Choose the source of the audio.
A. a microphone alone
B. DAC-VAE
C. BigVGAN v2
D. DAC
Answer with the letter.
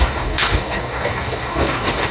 D